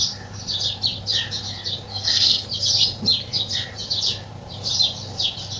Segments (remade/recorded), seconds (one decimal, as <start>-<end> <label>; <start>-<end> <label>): 0.0-1.9 recorded; 1.9-2.5 remade; 2.5-5.6 recorded

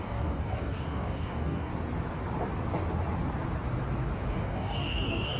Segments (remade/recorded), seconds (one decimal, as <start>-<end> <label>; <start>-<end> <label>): 0.0-1.7 remade; 1.7-4.3 recorded; 4.3-5.4 remade

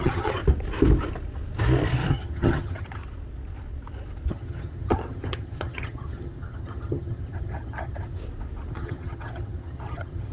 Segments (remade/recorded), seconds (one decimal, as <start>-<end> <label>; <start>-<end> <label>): 0.0-0.4 remade; 0.4-2.1 recorded; 2.1-3.0 remade; 3.0-4.3 recorded; 4.3-8.2 remade; 8.2-8.7 recorded; 8.7-10.3 remade

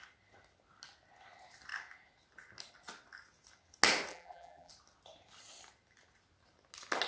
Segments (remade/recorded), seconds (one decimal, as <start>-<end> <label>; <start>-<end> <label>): 0.0-4.1 recorded; 4.1-4.7 remade; 4.7-7.1 recorded

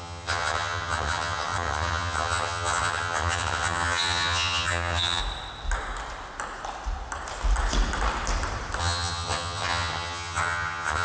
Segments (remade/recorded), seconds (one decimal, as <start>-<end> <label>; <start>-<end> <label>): 0.0-5.2 remade; 5.2-8.8 recorded; 8.8-11.0 remade

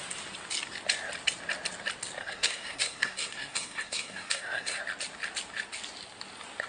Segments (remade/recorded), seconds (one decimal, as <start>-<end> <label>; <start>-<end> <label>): 0.0-2.2 recorded; 2.2-4.8 remade; 4.8-6.7 recorded